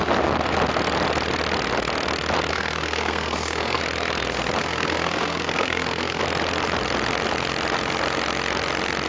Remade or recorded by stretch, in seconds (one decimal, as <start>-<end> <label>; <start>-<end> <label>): 0.0-2.5 recorded; 2.5-3.8 remade; 3.8-4.6 recorded; 4.6-6.2 remade; 6.2-9.1 recorded